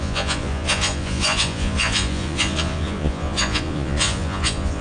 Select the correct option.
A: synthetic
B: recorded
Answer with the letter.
A